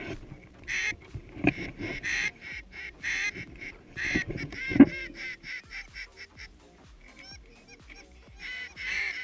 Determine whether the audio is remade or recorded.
remade